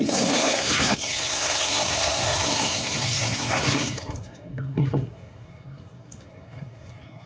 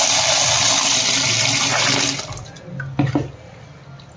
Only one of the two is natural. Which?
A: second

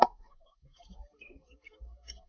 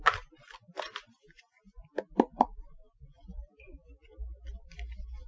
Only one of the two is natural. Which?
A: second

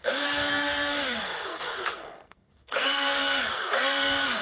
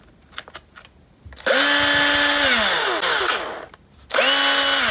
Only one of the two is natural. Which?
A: second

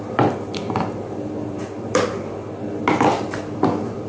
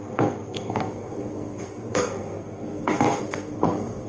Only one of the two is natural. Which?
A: first